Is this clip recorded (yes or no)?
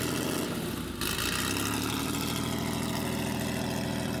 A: yes